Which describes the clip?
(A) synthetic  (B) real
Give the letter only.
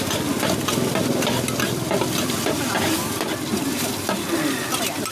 A